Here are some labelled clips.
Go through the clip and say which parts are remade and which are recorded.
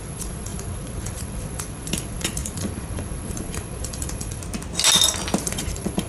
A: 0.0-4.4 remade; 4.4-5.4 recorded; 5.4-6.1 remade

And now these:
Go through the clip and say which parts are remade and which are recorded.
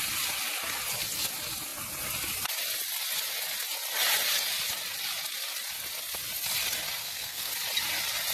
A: 0.0-7.0 recorded; 7.0-7.5 remade; 7.5-8.3 recorded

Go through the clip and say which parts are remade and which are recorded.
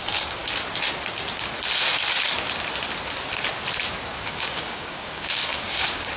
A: 0.0-0.4 remade; 0.4-4.1 recorded; 4.1-6.2 remade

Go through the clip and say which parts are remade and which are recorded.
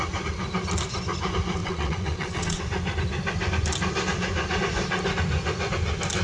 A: 0.0-1.6 recorded; 1.6-2.6 remade; 2.6-6.2 recorded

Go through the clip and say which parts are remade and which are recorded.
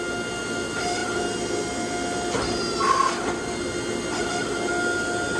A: 0.0-5.4 recorded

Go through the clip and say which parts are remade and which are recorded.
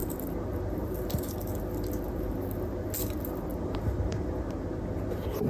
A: 0.0-0.9 remade; 0.9-3.5 recorded; 3.5-4.5 remade; 4.5-5.5 recorded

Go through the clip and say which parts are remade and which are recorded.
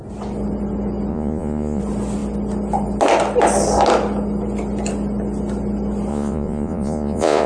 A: 0.0-1.1 recorded; 1.1-1.8 remade; 1.8-6.1 recorded; 6.1-7.5 remade